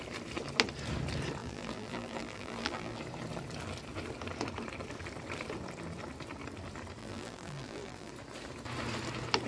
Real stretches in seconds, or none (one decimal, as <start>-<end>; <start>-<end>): 0.0-1.4; 3.0-7.0; 8.1-9.5